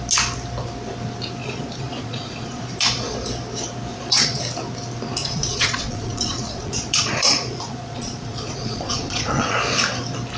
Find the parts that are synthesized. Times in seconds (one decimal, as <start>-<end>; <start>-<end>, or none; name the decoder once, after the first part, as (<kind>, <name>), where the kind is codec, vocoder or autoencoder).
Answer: 1.4-2.7 (vocoder, Vocos); 3.9-4.4; 5.2-9.6